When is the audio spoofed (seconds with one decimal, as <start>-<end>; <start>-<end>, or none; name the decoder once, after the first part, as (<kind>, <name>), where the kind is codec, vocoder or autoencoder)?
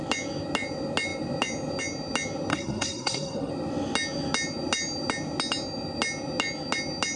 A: 2.5-3.5 (codec, SNAC)